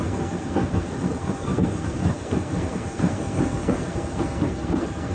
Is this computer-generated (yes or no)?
yes